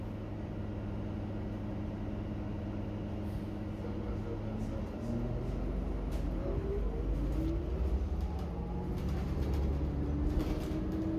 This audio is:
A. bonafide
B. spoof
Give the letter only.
A